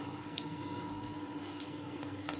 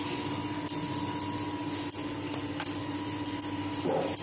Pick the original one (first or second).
second